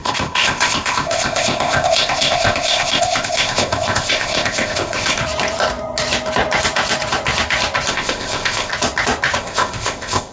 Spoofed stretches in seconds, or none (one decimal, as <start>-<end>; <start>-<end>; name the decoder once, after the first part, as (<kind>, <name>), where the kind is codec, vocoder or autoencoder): 0.0-5.2 (codec, ZipCodec); 7.9-8.7; 9.4-10.3